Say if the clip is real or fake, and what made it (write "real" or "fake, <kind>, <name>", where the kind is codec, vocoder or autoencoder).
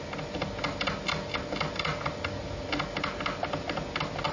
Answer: real